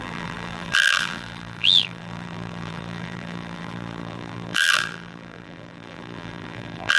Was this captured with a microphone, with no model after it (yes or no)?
no